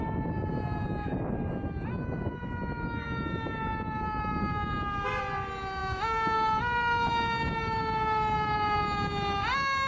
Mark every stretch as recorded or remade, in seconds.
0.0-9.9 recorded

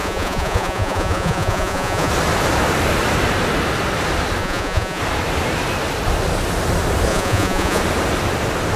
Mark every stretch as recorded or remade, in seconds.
0.0-2.1 remade; 2.1-4.4 recorded; 4.4-5.0 remade; 5.0-7.1 recorded; 7.1-7.8 remade; 7.8-8.8 recorded

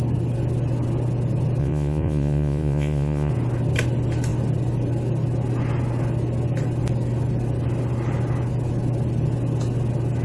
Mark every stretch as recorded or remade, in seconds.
0.0-1.6 recorded; 1.6-3.3 remade; 3.3-10.2 recorded